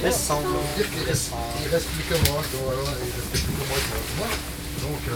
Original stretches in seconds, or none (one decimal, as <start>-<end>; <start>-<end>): 0.0-5.2